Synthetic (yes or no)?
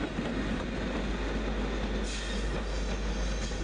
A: no